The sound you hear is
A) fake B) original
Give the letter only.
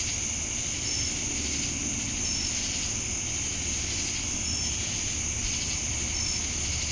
B